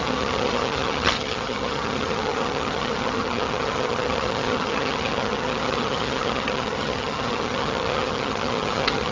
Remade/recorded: remade